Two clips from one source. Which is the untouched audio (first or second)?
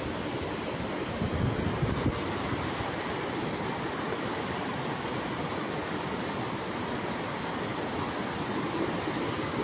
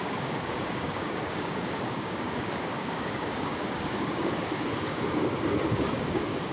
first